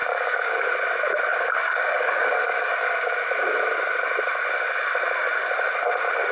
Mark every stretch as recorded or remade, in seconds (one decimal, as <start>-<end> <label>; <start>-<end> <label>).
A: 0.0-0.6 remade; 0.6-1.3 recorded; 1.3-2.7 remade; 2.7-6.3 recorded